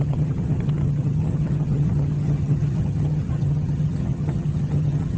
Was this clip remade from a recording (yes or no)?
yes